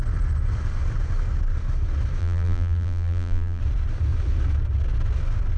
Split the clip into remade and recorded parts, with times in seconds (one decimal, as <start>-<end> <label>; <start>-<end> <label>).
0.0-2.2 recorded; 2.2-3.6 remade; 3.6-5.6 recorded